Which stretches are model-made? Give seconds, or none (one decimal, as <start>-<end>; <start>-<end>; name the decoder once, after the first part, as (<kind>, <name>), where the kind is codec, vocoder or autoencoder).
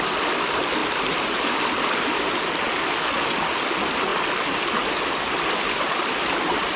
none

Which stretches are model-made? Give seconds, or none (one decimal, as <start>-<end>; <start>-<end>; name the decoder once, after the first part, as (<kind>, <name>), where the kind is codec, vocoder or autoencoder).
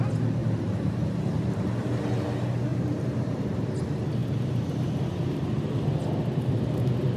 2.7-3.7 (vocoder, BigVGAN v2); 4.2-5.7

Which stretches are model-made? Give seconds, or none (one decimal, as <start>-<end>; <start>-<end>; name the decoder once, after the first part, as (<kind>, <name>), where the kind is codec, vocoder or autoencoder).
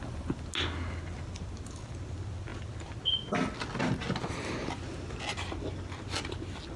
none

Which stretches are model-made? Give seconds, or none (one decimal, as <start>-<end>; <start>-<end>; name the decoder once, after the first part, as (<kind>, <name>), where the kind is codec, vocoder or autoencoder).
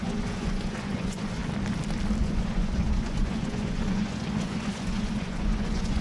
0.0-1.4 (vocoder, Vocos); 2.2-6.0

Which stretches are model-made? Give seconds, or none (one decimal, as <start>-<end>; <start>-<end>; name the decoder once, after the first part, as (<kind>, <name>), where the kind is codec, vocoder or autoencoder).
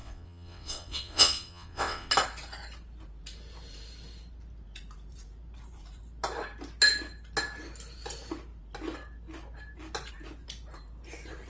0.0-2.1 (vocoder, WaveNeXt)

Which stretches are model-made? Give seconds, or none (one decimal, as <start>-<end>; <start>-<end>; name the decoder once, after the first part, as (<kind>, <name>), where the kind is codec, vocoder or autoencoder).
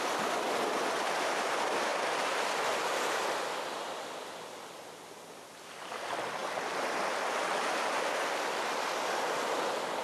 none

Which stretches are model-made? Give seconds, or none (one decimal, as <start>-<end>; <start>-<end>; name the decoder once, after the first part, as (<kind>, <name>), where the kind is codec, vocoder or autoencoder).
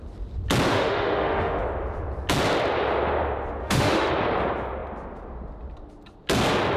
0.7-1.6 (autoencoder, DAC-VAE); 3.6-4.1